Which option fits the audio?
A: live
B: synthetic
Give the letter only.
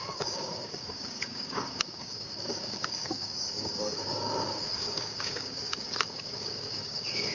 B